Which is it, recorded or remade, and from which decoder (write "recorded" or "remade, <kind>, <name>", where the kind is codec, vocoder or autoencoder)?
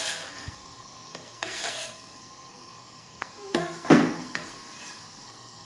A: remade, codec, SNAC